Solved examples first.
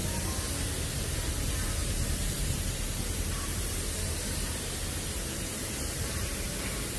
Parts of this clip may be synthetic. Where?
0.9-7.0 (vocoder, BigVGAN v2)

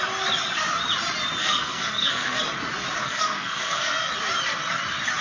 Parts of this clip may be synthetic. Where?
1.4-2.4 (codec, SNAC); 3.0-4.1